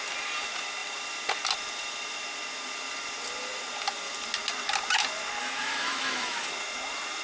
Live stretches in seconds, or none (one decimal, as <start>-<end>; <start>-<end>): 0.0-5.4; 6.5-7.2